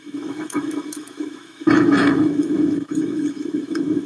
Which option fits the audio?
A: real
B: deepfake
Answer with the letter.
B